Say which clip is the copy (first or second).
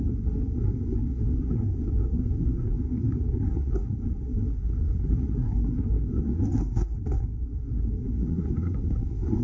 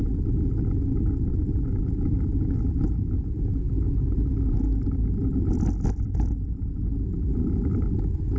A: first